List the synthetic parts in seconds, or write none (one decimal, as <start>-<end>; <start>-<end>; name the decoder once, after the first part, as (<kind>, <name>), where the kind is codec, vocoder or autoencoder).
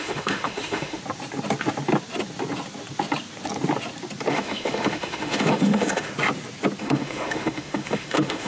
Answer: 0.0-1.0 (autoencoder, DAC-VAE); 4.3-6.1; 6.8-8.5